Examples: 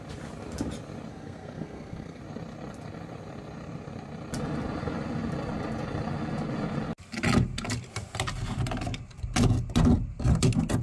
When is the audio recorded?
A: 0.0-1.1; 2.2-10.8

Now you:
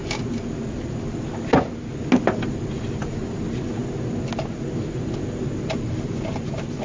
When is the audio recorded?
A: 0.0-6.8

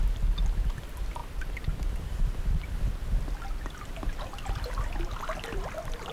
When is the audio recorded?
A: 0.0-1.2; 2.4-6.1

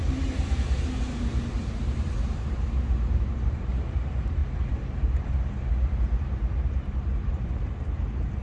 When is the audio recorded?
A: none

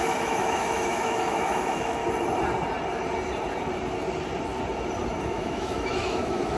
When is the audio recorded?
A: 2.0-5.2

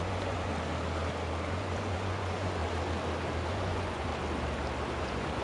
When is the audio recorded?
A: 0.5-1.5; 2.6-3.5; 4.1-5.0

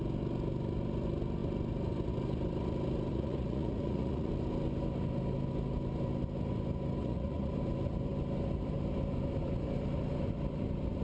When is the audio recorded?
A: 0.0-3.1; 4.3-7.0; 7.5-11.0

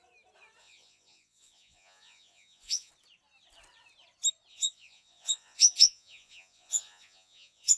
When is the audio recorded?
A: 0.0-0.6; 2.9-4.5